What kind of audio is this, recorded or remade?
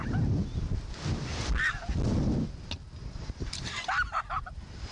recorded